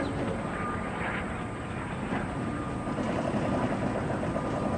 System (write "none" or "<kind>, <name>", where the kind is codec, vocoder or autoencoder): none